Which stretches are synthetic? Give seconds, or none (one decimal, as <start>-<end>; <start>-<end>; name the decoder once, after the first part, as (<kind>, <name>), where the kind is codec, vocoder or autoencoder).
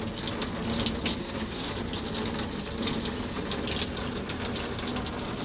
1.2-1.7 (codec, SNAC)